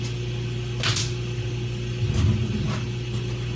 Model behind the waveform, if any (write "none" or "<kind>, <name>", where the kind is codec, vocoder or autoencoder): none